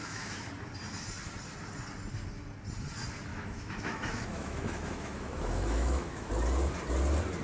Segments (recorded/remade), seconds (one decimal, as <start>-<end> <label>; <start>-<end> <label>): 0.0-0.5 remade; 0.5-3.3 recorded; 3.3-6.3 remade; 6.3-7.4 recorded